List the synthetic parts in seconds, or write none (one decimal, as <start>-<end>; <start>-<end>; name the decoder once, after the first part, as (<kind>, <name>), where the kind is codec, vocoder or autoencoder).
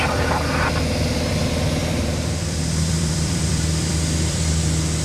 1.8-4.5 (vocoder, BigVGAN v2)